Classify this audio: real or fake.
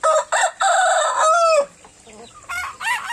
real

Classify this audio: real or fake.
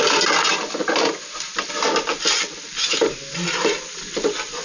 real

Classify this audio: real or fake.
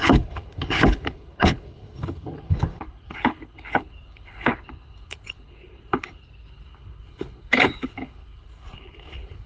fake